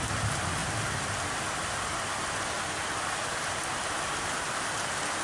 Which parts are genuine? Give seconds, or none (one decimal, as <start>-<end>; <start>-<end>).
0.0-5.2